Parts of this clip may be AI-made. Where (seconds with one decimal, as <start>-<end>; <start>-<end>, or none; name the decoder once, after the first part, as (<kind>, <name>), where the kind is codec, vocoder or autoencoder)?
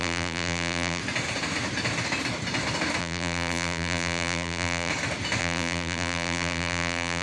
0.0-1.0 (vocoder, BigVGAN v2); 3.0-4.9; 5.4-7.2